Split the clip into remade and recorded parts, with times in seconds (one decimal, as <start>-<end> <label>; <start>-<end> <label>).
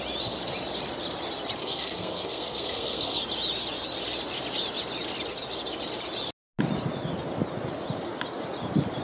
0.0-1.6 recorded; 1.6-3.2 remade; 3.2-9.0 recorded